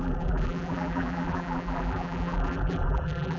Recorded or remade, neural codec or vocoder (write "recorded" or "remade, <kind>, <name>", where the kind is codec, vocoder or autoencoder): remade, vocoder, BigVGAN v2